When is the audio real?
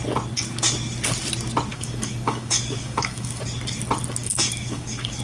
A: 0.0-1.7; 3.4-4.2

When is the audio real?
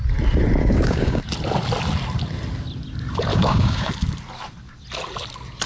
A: 0.0-0.6; 1.2-3.3; 3.9-5.7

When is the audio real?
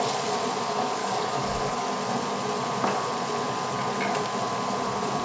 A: 0.0-1.0; 1.9-5.2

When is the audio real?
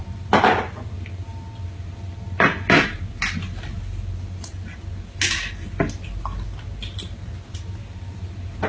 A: 0.0-8.7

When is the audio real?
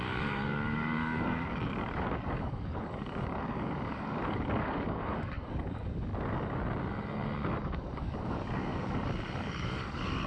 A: 6.1-7.6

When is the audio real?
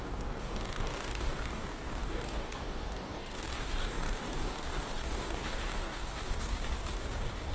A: none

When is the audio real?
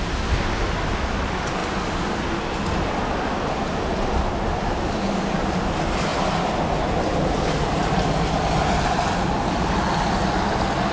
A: 0.0-10.9